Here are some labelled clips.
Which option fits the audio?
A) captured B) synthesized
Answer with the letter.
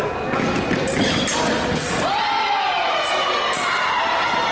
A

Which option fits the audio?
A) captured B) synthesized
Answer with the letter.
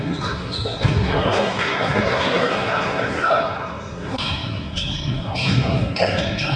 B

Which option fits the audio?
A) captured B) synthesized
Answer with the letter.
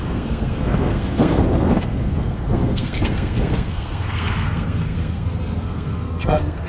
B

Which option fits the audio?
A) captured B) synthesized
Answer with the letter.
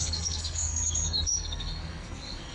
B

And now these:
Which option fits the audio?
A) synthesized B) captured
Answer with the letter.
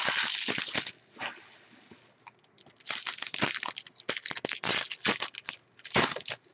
B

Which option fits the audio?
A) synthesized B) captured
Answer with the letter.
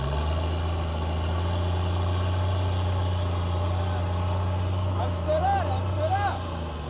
B